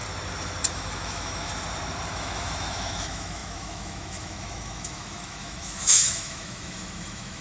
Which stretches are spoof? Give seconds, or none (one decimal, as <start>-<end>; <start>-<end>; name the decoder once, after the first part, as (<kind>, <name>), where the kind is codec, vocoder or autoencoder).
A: 0.7-1.5 (autoencoder, DAC-VAE); 2.1-7.4